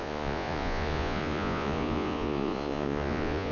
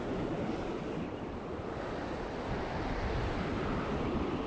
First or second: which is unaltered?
second